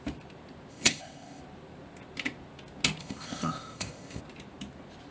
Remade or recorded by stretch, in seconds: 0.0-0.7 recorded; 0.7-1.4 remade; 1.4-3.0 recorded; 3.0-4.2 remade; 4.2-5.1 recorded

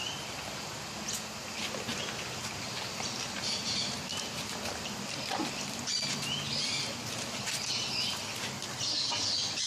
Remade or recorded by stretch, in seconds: 0.0-9.7 recorded

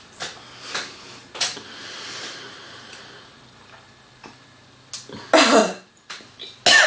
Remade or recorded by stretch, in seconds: 0.0-1.2 recorded; 1.2-3.0 remade; 3.0-5.6 recorded; 5.6-6.2 remade; 6.2-6.9 recorded

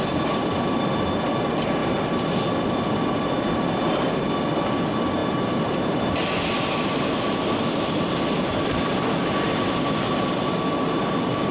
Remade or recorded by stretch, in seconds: 0.0-11.5 recorded

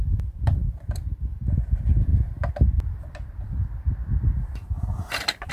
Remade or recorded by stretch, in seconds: 0.0-0.6 remade; 0.6-1.2 recorded; 1.2-2.1 remade; 2.1-5.5 recorded